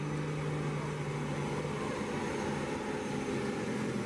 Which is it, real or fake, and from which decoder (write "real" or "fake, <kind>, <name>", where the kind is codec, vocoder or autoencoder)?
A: real